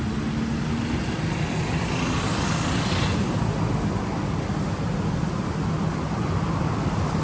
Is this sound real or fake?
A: real